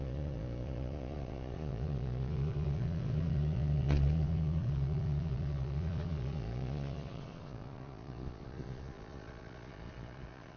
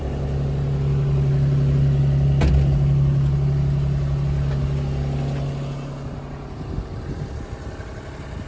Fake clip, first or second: first